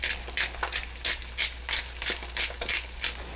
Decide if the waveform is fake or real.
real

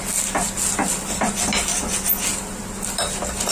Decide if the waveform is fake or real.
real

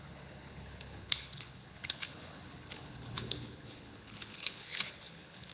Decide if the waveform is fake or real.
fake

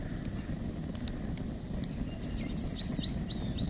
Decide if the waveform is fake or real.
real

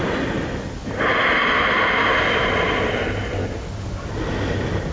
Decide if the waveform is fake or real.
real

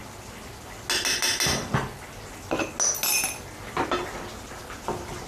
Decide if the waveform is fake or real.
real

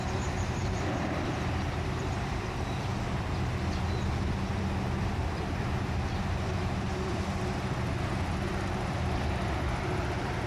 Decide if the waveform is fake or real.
fake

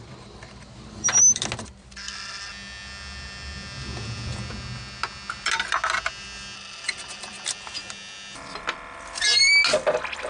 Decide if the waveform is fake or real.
real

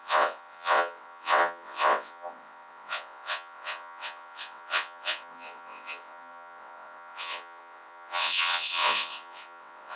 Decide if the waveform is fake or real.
fake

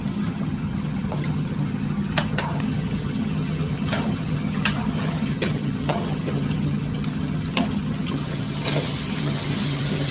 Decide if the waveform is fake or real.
fake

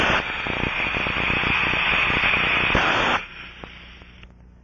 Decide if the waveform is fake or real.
real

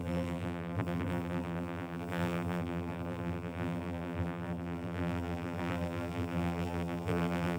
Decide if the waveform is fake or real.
fake